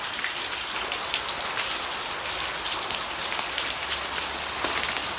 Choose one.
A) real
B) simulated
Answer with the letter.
A